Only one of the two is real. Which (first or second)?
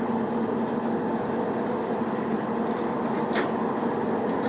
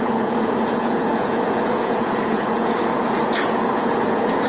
first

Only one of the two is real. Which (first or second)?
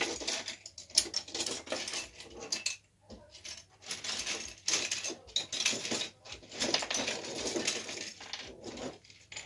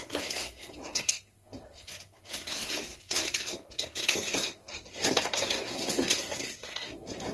first